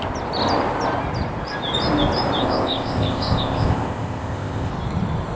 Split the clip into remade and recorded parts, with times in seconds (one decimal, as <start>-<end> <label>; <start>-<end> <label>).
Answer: 0.0-2.4 recorded; 2.4-4.7 remade; 4.7-5.4 recorded